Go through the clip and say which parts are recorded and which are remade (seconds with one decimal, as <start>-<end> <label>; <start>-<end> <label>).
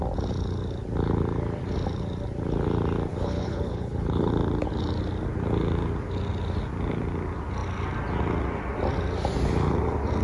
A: 0.0-3.1 recorded; 3.1-4.3 remade; 4.3-10.2 recorded